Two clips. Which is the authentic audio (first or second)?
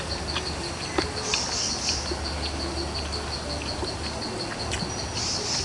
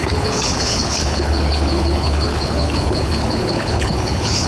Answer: first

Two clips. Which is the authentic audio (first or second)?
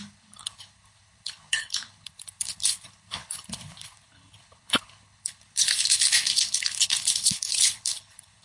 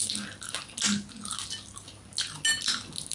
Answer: second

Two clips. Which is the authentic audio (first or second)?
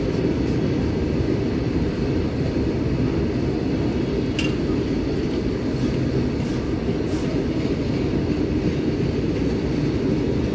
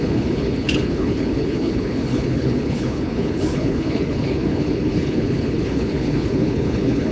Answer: first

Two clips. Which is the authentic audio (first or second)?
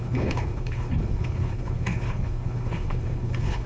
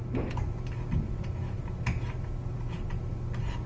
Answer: second